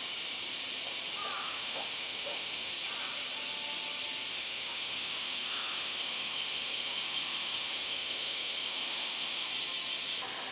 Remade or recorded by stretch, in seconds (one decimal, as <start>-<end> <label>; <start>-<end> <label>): 0.0-1.4 recorded; 1.4-2.7 remade; 2.7-4.3 recorded; 4.3-9.5 remade; 9.5-10.5 recorded